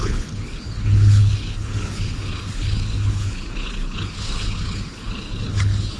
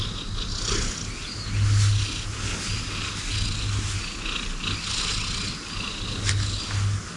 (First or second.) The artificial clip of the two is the first